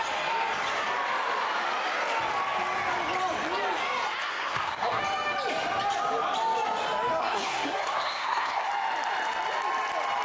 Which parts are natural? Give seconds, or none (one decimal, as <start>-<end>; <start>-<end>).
0.0-4.3; 5.0-7.2; 8.7-10.2